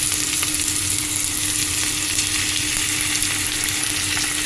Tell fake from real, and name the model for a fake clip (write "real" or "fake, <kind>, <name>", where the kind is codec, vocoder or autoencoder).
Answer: real